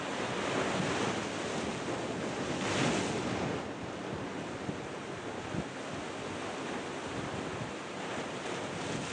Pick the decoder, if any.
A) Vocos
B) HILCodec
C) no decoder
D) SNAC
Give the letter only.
C